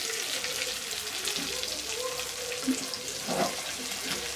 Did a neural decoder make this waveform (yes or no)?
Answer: no